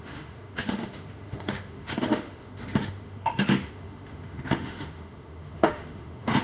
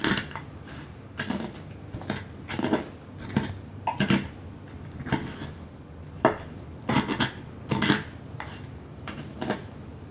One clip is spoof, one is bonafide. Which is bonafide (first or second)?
second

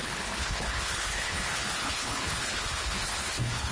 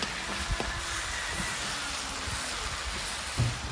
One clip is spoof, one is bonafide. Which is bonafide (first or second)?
second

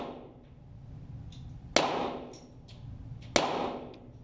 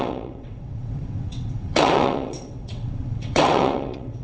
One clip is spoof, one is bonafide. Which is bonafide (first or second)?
first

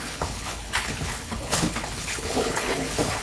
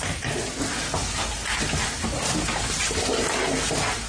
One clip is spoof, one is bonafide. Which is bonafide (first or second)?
second